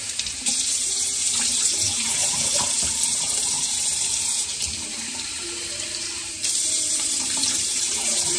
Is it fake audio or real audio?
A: fake